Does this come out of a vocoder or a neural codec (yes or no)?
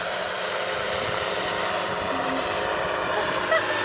yes